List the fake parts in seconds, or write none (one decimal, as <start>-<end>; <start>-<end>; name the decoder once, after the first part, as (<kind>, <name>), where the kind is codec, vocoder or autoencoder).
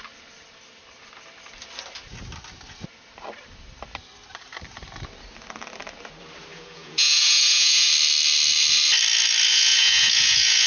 6.5-7.9 (vocoder, Vocos); 9.5-10.7